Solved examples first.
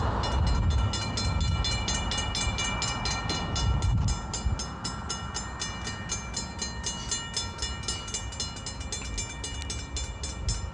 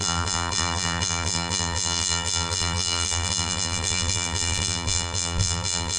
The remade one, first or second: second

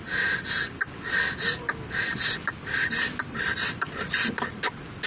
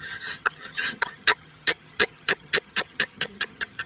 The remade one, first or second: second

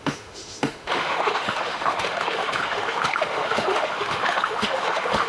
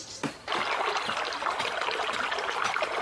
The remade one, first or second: first